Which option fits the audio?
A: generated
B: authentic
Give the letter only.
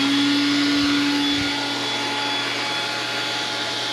B